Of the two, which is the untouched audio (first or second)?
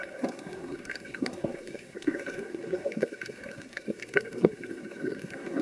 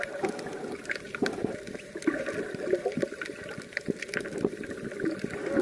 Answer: second